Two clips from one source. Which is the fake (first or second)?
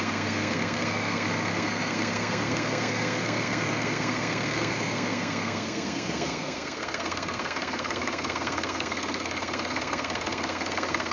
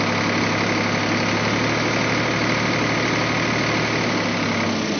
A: first